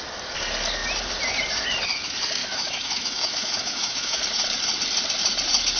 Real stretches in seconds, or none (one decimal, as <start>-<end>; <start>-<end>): 0.0-2.4; 4.2-5.8